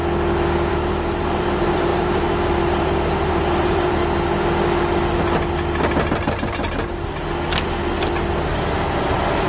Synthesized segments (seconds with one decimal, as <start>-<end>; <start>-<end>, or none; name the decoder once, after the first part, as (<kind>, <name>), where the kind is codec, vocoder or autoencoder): 0.7-4.0 (vocoder, BigVGAN v2); 8.4-9.5